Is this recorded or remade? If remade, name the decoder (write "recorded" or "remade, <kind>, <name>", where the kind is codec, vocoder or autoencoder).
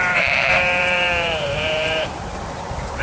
remade, vocoder, BigVGAN v2